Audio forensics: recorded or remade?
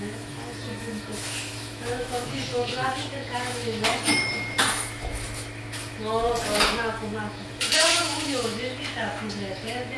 remade